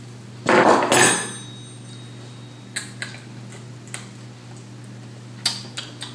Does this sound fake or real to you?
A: real